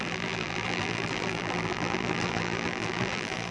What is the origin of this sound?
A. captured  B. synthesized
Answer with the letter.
B